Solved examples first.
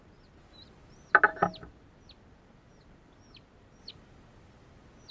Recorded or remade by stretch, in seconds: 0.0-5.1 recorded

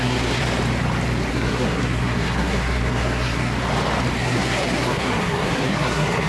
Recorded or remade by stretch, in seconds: 0.0-0.4 remade; 0.4-1.3 recorded; 1.3-3.5 remade; 3.5-4.2 recorded; 4.2-6.3 remade

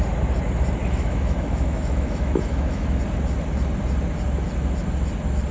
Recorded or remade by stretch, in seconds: 0.0-0.8 recorded; 0.8-3.0 remade; 3.0-5.5 recorded

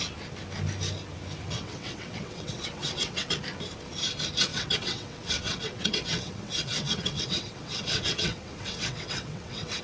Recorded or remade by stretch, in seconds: 0.0-1.4 recorded; 1.4-3.3 remade; 3.3-4.5 recorded; 4.5-9.8 remade

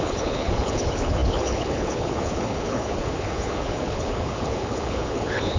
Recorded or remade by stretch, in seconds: 0.0-5.6 remade